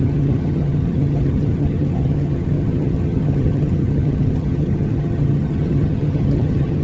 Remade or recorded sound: remade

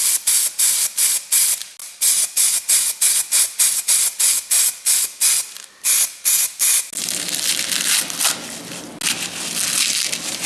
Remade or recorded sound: recorded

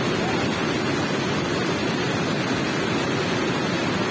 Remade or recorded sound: recorded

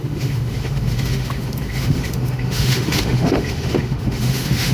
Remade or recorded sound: remade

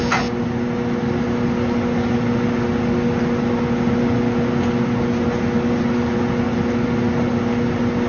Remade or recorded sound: recorded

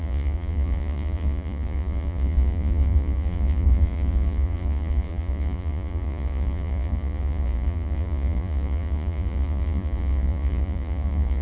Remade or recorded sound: remade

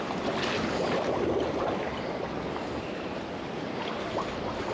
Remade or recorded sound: recorded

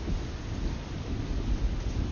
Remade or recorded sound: recorded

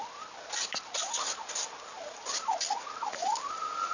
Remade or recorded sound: recorded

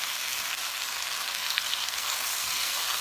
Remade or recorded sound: remade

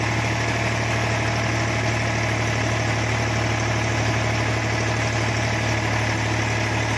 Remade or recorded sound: recorded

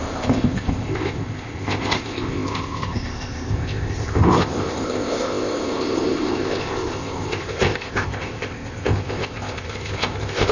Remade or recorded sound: remade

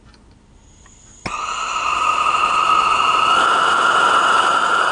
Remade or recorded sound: recorded